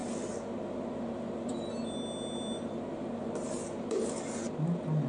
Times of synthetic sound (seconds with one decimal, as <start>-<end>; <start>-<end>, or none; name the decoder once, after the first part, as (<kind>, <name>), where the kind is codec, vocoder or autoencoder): none